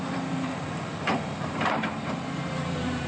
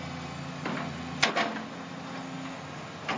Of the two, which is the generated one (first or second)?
first